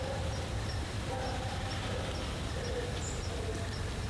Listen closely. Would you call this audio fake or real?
real